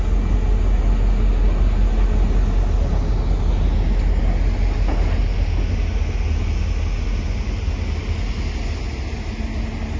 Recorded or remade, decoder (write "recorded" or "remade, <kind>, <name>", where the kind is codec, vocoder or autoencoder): recorded